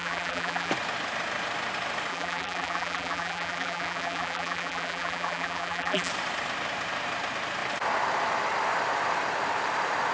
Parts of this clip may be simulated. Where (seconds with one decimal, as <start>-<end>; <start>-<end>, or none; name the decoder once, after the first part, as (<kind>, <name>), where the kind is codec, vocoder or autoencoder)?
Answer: 0.0-0.7 (vocoder, BigVGAN v2); 2.1-6.1